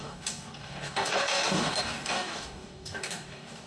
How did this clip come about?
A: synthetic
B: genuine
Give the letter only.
A